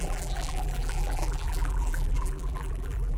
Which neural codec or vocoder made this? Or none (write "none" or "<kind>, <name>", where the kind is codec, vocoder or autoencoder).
vocoder, BigVGAN v2